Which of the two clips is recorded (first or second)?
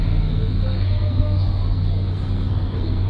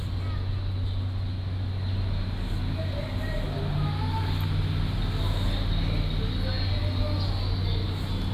second